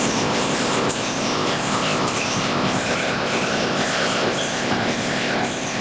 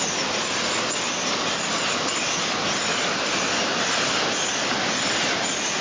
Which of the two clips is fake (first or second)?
first